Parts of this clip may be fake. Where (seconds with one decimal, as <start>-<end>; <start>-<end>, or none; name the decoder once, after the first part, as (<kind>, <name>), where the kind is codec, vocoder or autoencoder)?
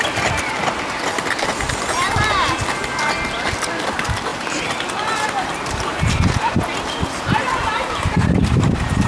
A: 4.3-6.5 (vocoder, BigVGAN v2); 7.4-9.1